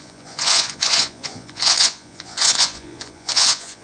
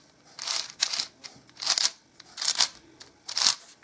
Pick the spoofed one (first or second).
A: first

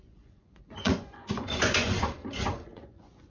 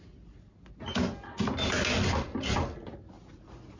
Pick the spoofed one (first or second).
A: first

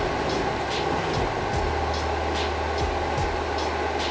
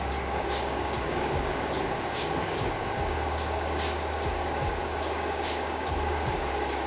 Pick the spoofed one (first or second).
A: second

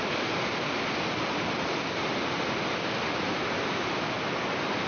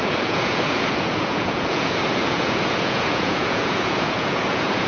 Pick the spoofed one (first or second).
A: second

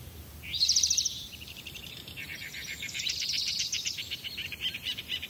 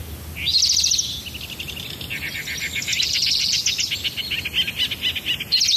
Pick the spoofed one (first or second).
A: first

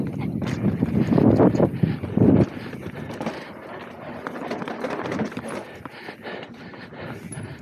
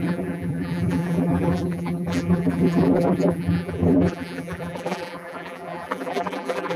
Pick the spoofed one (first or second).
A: second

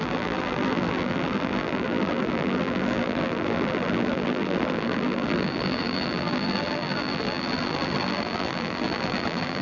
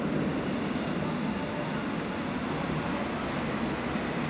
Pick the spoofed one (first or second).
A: first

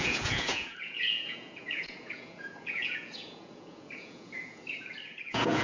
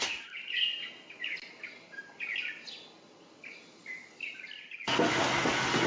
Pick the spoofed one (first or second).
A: first